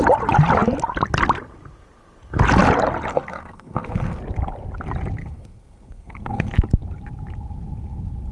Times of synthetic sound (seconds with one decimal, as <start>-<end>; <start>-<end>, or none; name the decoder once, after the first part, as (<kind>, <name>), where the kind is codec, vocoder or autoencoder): 3.1-4.2 (codec, SNAC); 5.2-6.5